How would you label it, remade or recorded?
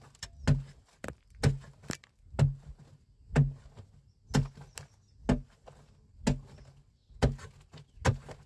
recorded